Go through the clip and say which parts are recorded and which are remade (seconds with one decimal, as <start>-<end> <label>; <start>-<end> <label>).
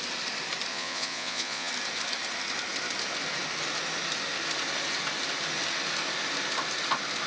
0.0-0.7 recorded; 0.7-1.7 remade; 1.7-7.3 recorded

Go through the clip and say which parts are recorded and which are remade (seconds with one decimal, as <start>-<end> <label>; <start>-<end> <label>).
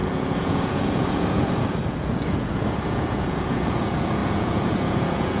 0.0-5.4 remade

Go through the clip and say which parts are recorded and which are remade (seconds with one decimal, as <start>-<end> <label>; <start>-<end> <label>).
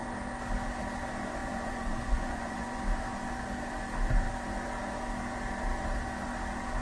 0.0-1.4 recorded; 1.4-2.8 remade; 2.8-6.8 recorded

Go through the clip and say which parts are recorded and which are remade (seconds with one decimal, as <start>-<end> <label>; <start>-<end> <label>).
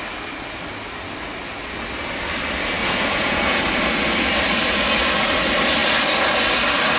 0.0-2.8 recorded; 2.8-3.6 remade; 3.6-7.0 recorded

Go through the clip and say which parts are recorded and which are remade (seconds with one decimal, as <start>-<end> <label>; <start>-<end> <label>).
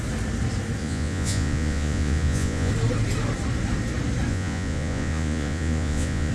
0.0-0.8 recorded; 0.8-2.7 remade; 2.7-4.3 recorded; 4.3-6.3 remade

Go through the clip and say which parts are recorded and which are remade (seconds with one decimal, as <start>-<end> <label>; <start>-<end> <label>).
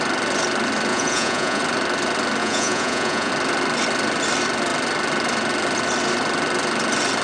0.0-0.9 recorded; 0.9-1.6 remade; 1.6-2.4 recorded; 2.4-3.3 remade; 3.3-7.2 recorded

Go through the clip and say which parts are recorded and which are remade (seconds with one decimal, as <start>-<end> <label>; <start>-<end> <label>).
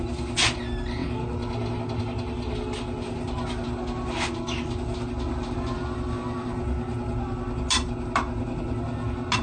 0.0-9.4 recorded